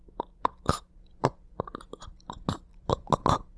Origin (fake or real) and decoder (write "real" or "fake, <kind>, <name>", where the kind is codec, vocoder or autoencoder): real